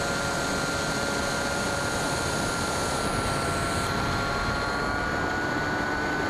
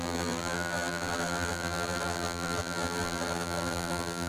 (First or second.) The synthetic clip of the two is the second